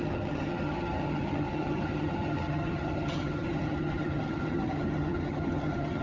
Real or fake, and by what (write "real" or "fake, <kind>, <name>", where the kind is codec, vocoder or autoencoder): fake, vocoder, HiFi-GAN